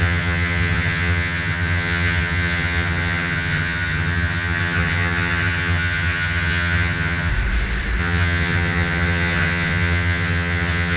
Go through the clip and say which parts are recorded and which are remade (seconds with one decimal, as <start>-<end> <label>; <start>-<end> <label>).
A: 0.0-7.3 remade; 7.3-8.0 recorded; 8.0-11.0 remade